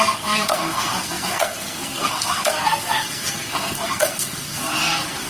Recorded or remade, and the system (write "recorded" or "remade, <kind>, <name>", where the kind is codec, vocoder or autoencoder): remade, codec, SNAC